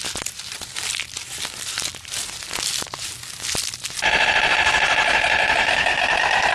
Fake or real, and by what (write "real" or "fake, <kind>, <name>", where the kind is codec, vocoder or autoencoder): real